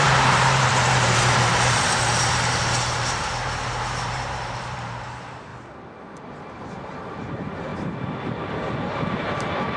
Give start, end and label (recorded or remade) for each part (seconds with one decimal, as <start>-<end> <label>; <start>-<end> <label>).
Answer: 0.0-5.5 remade; 5.5-6.4 recorded; 6.4-7.7 remade; 7.7-9.1 recorded; 9.1-9.8 remade